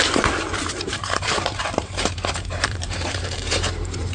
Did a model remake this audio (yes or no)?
yes